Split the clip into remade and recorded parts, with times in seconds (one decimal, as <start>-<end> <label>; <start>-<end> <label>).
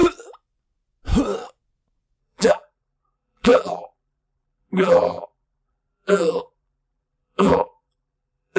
0.0-2.2 recorded; 2.2-8.6 remade